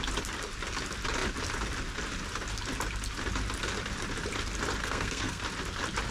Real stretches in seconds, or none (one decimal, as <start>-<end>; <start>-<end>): 0.0-4.8; 5.4-6.1